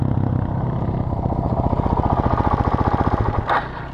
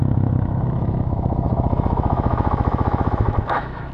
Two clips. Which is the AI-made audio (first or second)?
second